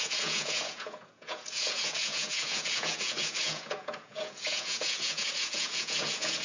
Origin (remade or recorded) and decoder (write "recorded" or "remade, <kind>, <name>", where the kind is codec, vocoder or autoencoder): remade, vocoder, Vocos